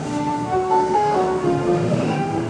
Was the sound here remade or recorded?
remade